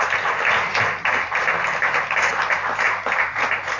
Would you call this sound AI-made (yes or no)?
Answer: no